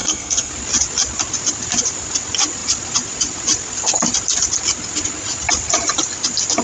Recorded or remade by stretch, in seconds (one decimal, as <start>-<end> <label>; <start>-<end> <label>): 0.0-0.5 remade; 0.5-6.6 recorded